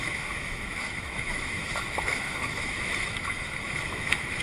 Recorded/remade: remade